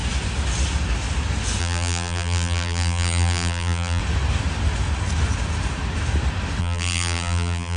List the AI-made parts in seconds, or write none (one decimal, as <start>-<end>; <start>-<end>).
1.6-4.0; 6.6-7.8